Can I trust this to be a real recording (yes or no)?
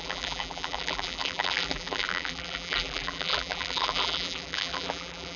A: no